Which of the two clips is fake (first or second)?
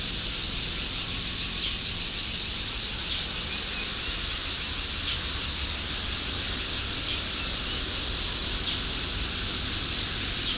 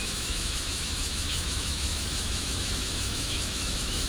second